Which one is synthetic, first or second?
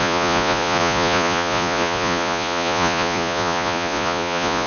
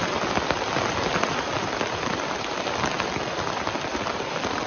first